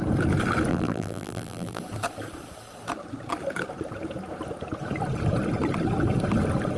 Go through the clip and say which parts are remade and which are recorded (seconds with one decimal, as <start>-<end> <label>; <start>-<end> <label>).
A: 0.0-0.7 recorded; 0.7-1.8 remade; 1.8-6.8 recorded